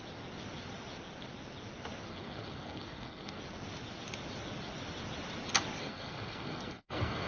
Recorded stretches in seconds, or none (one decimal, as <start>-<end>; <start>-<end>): 0.0-2.1; 3.4-5.8